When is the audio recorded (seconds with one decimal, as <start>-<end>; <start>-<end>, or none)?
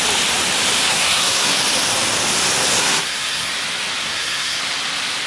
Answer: 0.0-0.9; 1.6-2.8; 3.5-4.0; 4.6-5.3